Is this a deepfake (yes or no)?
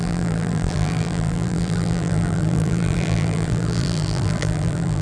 yes